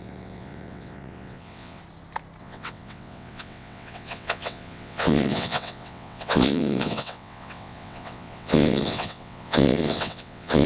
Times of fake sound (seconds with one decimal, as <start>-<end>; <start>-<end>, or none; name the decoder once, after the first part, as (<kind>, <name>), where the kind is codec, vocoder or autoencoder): 0.0-1.8 (vocoder, WaveNeXt); 2.4-10.7